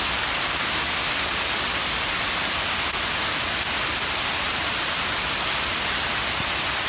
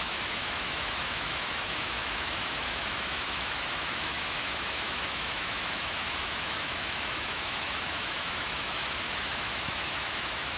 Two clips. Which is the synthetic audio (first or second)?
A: second